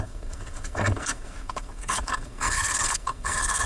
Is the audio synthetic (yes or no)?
yes